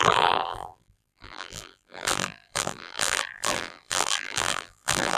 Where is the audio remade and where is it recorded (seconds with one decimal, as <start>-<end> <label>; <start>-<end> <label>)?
0.0-5.2 remade